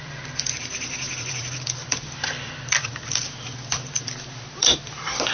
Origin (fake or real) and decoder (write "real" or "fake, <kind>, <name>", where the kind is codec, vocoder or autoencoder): fake, vocoder, BigVGAN v2